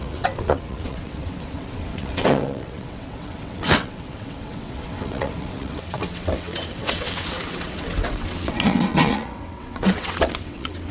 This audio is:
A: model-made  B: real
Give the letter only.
A